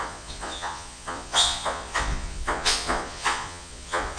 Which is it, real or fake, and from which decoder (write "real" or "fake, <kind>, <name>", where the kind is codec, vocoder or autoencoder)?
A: fake, vocoder, Vocos